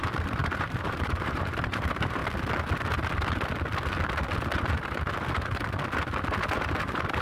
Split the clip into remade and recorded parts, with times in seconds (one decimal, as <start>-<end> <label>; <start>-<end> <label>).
0.0-2.2 remade; 2.2-6.5 recorded; 6.5-7.2 remade